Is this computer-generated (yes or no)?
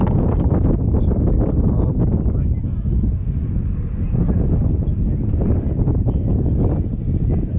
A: yes